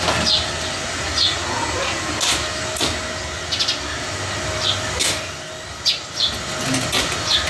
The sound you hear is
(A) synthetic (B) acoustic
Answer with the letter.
B